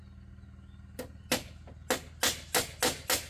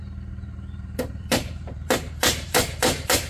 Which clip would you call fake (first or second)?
second